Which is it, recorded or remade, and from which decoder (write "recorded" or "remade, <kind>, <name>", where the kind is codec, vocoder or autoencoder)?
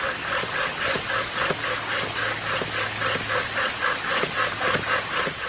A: recorded